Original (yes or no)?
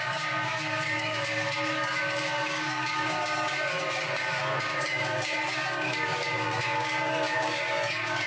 no